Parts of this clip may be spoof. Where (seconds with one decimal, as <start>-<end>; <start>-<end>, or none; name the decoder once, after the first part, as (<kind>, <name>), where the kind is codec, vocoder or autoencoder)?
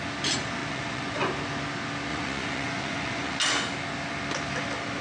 0.6-1.3 (vocoder, Vocos); 2.1-3.4